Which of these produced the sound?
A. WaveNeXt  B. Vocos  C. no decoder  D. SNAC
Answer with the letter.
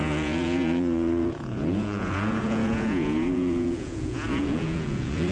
B